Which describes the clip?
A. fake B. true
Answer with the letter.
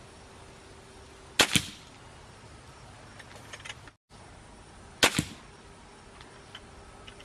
B